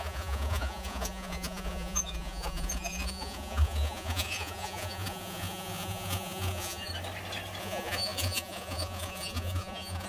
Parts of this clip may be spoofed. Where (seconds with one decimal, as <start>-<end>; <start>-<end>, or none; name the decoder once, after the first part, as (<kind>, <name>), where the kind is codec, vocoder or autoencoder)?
0.0-6.9 (vocoder, Vocos); 7.6-10.1